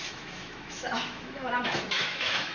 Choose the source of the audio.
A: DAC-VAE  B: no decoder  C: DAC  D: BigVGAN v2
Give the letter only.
A